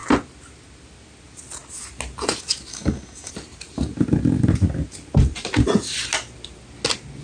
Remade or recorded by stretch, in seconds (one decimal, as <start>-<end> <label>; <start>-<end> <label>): 0.0-2.7 recorded; 2.7-3.3 remade; 3.3-7.2 recorded